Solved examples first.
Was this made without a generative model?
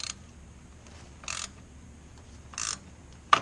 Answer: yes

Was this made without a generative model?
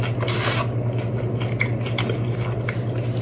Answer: yes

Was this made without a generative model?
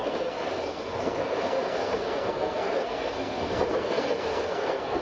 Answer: no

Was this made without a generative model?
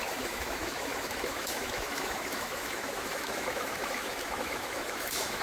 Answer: no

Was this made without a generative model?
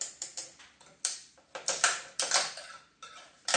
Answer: yes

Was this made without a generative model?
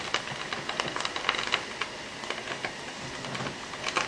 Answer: yes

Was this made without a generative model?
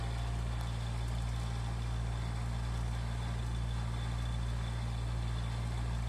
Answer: yes